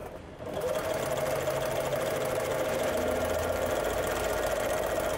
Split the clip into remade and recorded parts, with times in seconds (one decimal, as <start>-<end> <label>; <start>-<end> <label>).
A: 0.0-1.0 remade; 1.0-1.9 recorded; 1.9-4.1 remade; 4.1-5.2 recorded